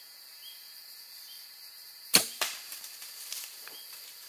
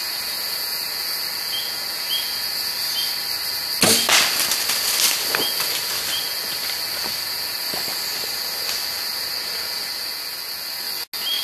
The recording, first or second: second